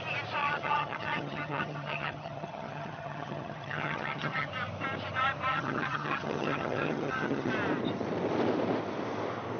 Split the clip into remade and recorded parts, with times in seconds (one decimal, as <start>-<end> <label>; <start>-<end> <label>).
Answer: 0.0-0.4 recorded; 0.4-4.5 remade; 4.5-5.5 recorded; 5.5-7.5 remade; 7.5-9.6 recorded